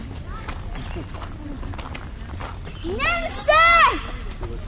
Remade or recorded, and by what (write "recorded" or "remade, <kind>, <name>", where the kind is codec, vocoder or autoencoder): recorded